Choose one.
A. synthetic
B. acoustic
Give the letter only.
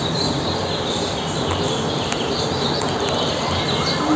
B